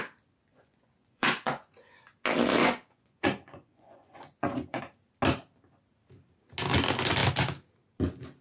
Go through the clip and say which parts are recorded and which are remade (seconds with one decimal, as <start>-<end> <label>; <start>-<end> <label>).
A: 0.0-0.5 recorded; 0.5-2.0 remade; 2.0-2.6 recorded; 2.6-4.8 remade; 4.8-8.4 recorded